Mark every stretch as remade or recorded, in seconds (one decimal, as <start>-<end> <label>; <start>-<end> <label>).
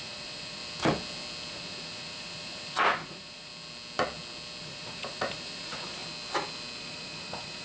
0.0-0.6 remade; 0.6-1.5 recorded; 1.5-3.5 remade; 3.5-4.6 recorded; 4.6-6.0 remade; 6.0-6.8 recorded; 6.8-7.6 remade